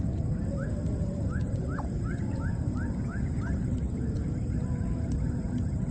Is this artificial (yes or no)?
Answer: yes